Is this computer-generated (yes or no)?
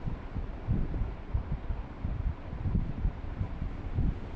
yes